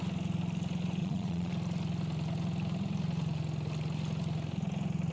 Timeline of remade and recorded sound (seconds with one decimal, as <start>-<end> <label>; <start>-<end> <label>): 0.0-1.0 recorded; 1.0-1.5 remade; 1.5-5.1 recorded